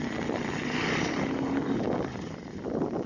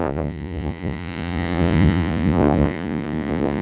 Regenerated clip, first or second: second